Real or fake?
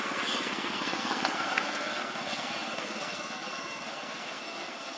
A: fake